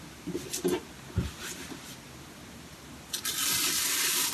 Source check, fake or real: real